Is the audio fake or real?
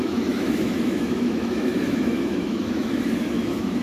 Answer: fake